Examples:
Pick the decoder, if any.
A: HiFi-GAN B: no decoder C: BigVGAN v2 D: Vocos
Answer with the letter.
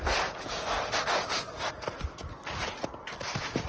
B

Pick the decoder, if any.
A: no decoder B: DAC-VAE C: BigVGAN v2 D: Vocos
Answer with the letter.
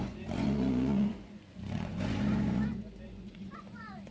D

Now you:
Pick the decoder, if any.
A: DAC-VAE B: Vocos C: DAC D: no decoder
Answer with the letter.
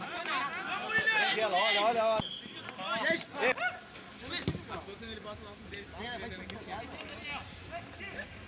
D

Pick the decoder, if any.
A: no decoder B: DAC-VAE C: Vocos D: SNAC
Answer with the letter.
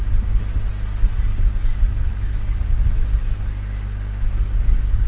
A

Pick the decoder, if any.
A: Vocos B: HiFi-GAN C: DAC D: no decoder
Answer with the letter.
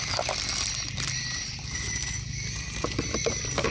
D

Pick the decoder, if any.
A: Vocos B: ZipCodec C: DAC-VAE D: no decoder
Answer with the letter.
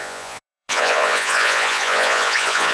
A